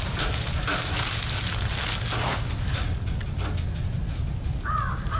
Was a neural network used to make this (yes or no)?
no